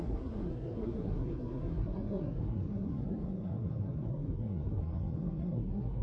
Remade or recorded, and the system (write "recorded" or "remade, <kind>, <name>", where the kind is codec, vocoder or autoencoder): remade, codec, SNAC